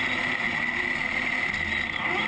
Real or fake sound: real